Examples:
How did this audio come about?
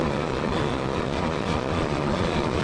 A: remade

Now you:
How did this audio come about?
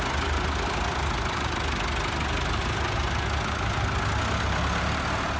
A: recorded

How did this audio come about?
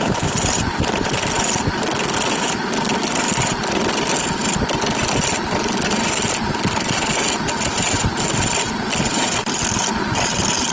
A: recorded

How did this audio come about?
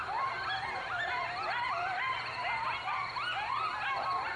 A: recorded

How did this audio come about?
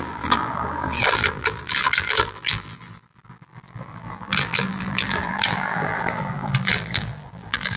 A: remade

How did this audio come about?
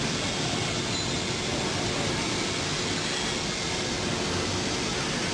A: recorded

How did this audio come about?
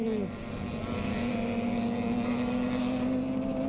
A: recorded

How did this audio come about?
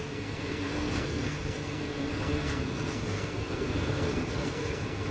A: remade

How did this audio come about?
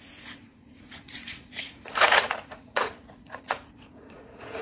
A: remade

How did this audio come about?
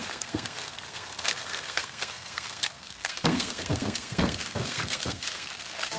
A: remade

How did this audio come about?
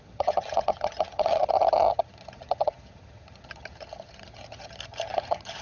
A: remade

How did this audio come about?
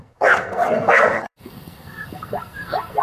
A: remade